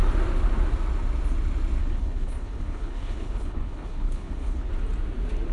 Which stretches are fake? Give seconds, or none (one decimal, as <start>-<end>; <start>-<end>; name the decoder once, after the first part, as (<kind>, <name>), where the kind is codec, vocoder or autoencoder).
1.8-4.7 (codec, HILCodec)